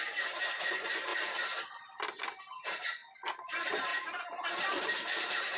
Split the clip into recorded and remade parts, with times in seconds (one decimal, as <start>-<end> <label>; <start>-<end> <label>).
0.0-1.1 remade; 1.1-2.4 recorded; 2.4-3.0 remade; 3.0-3.5 recorded; 3.5-5.6 remade

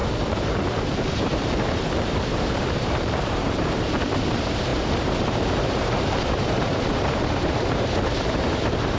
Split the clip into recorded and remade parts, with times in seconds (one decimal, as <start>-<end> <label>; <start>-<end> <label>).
0.0-9.0 remade